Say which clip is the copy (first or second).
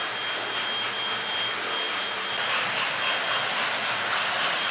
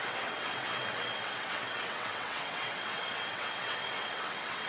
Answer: second